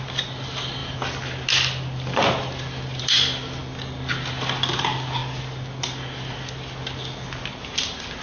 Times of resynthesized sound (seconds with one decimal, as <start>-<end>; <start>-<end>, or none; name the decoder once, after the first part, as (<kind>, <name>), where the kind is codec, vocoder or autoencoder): none

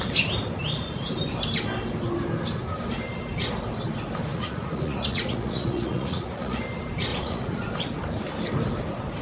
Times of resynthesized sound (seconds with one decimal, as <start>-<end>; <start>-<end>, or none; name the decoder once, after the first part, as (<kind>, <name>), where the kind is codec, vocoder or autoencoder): 4.3-6.6 (vocoder, Vocos); 7.1-7.7

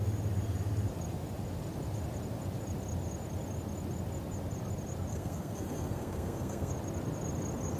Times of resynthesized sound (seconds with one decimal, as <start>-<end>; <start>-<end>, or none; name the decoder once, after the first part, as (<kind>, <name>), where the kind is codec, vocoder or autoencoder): 5.1-6.7 (codec, SNAC)

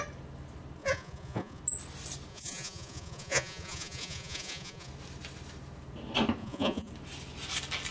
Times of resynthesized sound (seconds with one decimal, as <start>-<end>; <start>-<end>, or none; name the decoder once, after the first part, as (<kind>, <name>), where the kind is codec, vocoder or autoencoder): 0.8-1.6 (vocoder, Vocos); 2.3-4.9; 6.4-6.9